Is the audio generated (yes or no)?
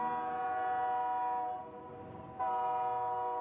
no